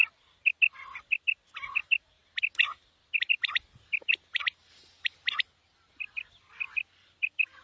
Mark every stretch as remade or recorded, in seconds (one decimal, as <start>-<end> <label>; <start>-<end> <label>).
0.0-7.6 recorded